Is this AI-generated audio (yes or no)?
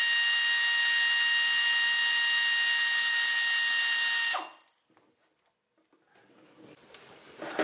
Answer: no